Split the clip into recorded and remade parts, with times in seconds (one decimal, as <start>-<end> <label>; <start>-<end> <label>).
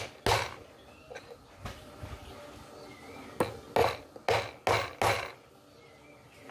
0.0-6.5 recorded